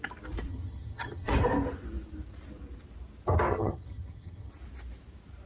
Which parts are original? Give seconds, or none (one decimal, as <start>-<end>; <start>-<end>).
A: 0.0-0.5; 1.3-3.5; 4.5-5.5